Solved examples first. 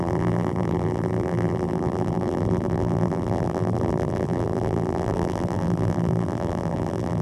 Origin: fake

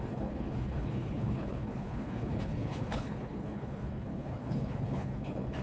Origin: fake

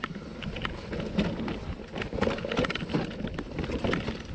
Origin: real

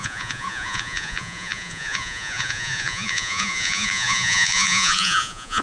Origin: fake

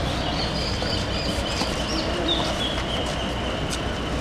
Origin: real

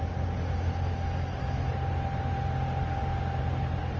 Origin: real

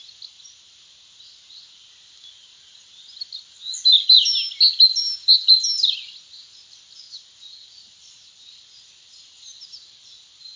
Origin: real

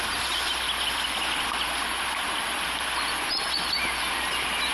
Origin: fake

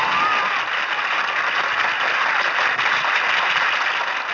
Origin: real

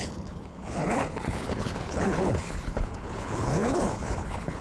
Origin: fake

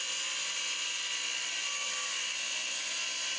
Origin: real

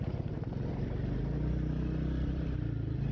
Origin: real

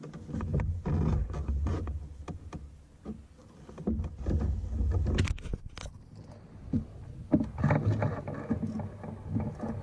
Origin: real